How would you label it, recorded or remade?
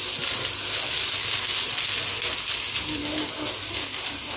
recorded